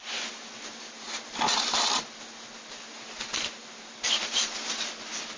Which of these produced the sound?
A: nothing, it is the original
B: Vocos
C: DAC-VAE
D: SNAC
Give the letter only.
A